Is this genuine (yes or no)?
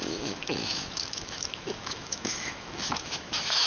no